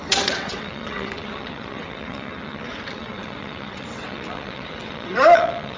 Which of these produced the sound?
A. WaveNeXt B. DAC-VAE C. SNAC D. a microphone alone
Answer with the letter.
A